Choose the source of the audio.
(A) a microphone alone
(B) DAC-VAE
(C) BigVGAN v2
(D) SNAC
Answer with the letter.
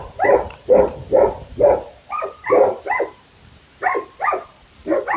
C